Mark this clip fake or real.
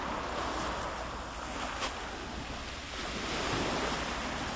real